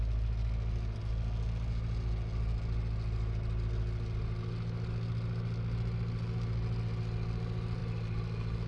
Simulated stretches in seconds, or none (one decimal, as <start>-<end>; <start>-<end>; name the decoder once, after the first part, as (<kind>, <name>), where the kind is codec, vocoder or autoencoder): none